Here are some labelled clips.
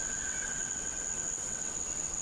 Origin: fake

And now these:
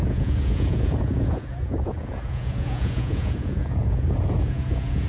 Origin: fake